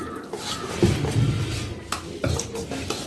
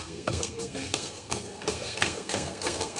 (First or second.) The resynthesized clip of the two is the second